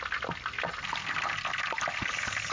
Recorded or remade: recorded